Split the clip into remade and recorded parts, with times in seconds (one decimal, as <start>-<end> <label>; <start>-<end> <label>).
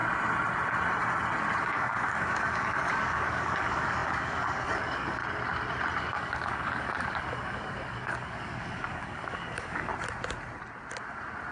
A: 0.0-1.6 recorded; 1.6-5.2 remade; 5.2-6.0 recorded; 6.0-9.9 remade; 9.9-11.5 recorded